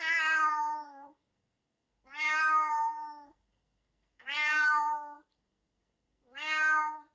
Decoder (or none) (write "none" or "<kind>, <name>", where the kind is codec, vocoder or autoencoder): codec, SNAC